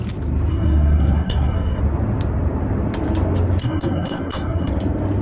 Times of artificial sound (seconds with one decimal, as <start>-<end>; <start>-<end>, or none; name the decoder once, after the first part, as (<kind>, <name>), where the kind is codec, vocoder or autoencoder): 0.5-1.8 (codec, SNAC); 3.6-4.7